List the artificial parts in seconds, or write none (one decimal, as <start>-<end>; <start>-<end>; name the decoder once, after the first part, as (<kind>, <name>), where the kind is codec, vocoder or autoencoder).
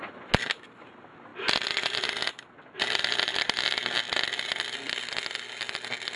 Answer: none